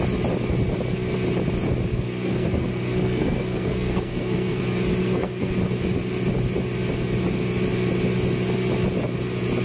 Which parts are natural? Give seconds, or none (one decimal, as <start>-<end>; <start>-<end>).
0.0-1.9; 4.6-5.0; 5.5-9.6